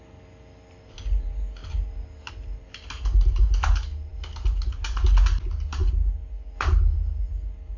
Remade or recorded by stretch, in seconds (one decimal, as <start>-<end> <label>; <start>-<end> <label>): 0.0-7.8 recorded